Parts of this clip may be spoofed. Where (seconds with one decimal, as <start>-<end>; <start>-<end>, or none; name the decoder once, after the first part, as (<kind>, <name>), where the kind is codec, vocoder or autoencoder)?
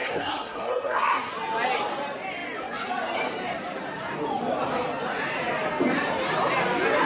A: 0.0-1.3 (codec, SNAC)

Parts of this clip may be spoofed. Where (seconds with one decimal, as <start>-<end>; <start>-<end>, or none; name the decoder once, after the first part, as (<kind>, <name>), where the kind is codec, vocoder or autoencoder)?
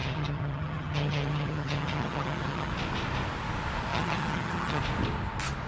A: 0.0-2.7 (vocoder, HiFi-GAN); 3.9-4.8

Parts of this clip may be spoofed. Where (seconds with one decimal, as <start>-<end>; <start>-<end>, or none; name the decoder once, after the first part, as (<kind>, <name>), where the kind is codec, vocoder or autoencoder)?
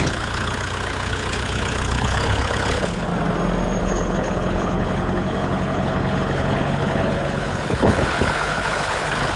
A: 0.0-3.1 (codec, HILCodec); 3.8-9.4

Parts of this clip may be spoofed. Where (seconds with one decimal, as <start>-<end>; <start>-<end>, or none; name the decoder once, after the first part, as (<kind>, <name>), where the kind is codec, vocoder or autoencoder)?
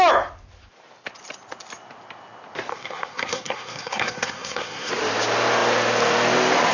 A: 2.7-4.9 (codec, SNAC)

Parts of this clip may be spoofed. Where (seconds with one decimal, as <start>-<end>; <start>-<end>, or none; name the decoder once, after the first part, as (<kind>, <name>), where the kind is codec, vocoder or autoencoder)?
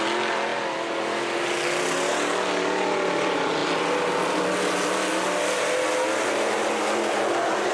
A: none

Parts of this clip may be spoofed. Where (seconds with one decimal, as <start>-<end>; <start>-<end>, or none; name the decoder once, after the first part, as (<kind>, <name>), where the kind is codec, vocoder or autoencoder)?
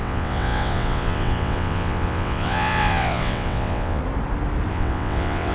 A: 0.0-4.0 (vocoder, WaveNeXt); 4.7-5.5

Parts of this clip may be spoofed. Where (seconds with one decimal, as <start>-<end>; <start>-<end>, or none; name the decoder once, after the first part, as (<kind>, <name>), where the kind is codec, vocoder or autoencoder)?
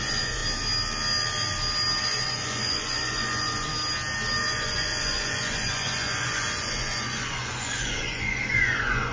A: 0.0-0.4 (vocoder, Vocos); 2.0-3.7; 4.4-9.1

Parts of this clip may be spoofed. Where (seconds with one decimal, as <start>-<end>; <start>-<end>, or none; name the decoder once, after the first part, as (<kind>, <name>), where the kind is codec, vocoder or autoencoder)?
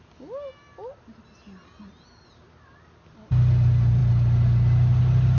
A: none